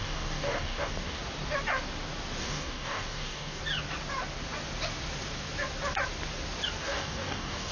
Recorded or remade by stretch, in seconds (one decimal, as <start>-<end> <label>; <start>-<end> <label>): 0.0-1.2 remade; 1.2-2.4 recorded; 2.4-3.6 remade; 3.6-6.8 recorded; 6.8-7.7 remade